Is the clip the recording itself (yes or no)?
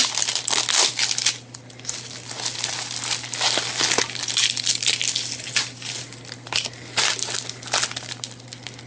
yes